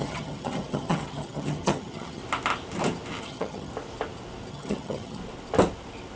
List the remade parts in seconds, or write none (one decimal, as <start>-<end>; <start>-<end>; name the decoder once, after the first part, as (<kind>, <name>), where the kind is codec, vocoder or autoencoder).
0.0-2.2 (vocoder, HiFi-GAN); 3.2-3.7; 4.5-5.2